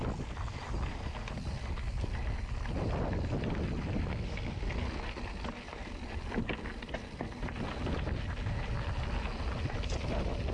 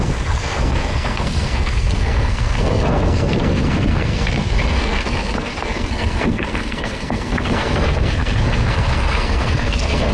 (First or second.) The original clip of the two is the first